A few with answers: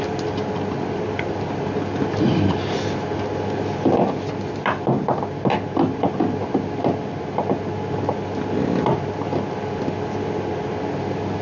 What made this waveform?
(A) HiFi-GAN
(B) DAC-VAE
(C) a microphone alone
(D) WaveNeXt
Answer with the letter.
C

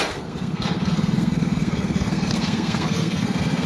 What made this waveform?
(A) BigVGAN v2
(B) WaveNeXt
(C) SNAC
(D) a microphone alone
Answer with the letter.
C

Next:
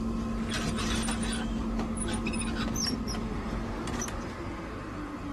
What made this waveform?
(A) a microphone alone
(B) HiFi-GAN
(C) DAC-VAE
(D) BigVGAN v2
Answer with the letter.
A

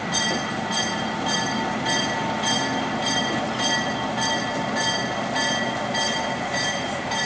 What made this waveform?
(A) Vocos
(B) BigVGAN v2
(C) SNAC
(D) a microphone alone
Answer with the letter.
D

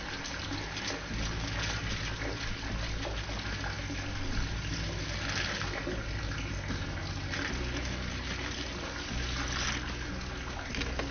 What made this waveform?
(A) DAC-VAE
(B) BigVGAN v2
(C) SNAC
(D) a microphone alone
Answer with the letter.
D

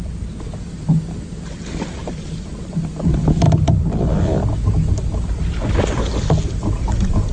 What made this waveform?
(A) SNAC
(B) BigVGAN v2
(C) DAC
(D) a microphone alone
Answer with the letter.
D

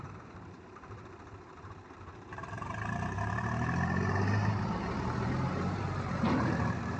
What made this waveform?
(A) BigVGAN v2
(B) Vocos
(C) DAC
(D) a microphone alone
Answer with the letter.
A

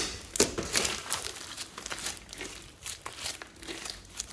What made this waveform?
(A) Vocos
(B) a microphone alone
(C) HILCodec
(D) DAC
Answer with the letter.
B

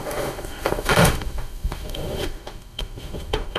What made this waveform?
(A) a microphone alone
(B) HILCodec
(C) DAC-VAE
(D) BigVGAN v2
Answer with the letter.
C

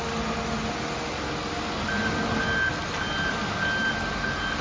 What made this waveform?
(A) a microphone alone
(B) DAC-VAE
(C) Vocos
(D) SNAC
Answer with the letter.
A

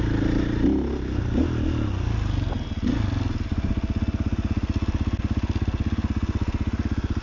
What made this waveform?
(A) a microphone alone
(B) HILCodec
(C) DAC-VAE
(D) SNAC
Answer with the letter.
A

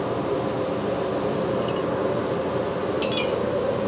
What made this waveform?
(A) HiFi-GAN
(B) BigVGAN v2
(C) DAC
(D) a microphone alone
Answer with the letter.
D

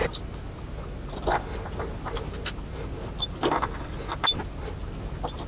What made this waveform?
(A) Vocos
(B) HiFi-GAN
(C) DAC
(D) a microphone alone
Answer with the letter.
D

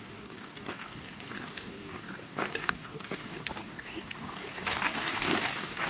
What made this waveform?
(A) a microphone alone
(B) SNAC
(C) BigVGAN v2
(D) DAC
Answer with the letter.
D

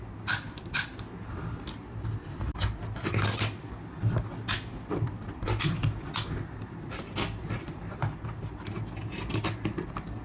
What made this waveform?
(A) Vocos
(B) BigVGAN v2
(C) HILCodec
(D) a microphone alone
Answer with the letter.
D